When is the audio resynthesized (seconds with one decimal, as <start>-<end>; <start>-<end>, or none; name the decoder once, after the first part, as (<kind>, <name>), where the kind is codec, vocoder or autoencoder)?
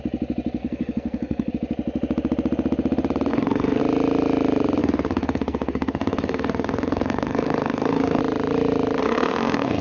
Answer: 0.6-1.5 (codec, SNAC); 3.3-3.8; 4.8-8.2; 9.0-9.8